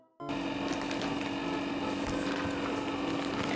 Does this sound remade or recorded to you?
recorded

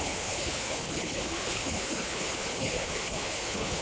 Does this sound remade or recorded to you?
remade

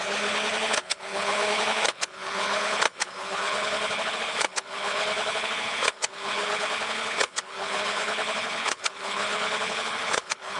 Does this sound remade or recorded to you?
remade